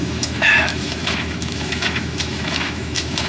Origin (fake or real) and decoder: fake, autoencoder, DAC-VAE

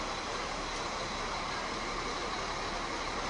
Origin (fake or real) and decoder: real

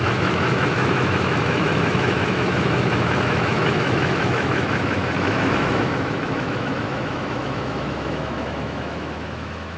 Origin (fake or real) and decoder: fake, autoencoder, DAC-VAE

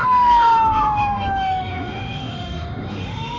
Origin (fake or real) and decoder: fake, autoencoder, DAC-VAE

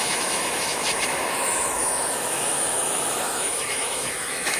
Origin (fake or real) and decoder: fake, autoencoder, DAC-VAE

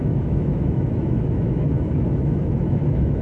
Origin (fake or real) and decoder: fake, autoencoder, DAC-VAE